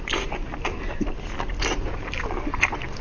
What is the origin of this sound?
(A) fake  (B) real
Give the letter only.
B